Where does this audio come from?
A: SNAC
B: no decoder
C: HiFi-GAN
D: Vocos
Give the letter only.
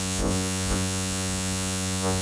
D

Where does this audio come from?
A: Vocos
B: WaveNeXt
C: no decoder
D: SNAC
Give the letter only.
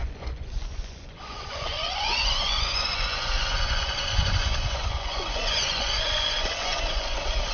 A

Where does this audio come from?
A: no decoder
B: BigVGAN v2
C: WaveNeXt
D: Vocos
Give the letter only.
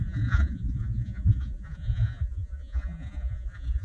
D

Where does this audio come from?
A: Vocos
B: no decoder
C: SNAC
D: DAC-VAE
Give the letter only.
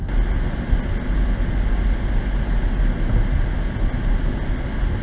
B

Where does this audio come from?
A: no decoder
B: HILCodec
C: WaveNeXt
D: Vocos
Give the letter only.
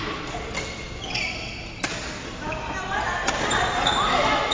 A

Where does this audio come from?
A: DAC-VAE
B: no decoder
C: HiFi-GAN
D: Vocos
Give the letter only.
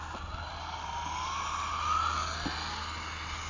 B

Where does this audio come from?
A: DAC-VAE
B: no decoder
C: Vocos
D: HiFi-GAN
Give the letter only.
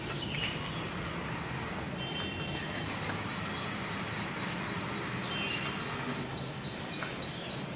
B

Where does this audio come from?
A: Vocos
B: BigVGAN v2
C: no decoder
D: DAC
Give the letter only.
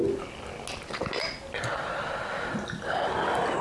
C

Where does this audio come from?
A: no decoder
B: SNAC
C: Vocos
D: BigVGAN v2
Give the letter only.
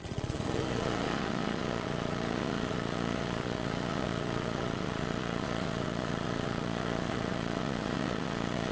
C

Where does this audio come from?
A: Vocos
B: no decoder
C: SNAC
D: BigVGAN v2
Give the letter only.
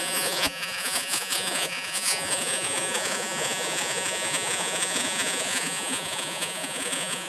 A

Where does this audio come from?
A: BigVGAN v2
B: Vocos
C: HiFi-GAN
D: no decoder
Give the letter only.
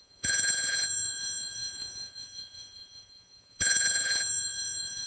B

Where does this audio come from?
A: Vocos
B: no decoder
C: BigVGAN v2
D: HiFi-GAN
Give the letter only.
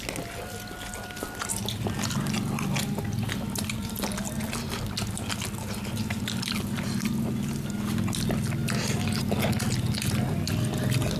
B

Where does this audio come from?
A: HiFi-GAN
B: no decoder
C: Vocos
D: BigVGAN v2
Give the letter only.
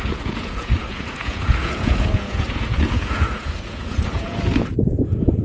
C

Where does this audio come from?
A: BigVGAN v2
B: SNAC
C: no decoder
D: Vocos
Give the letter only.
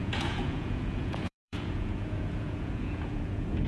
D